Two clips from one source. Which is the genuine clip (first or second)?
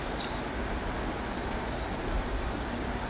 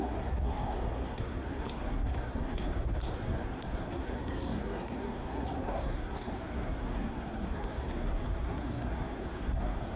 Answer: first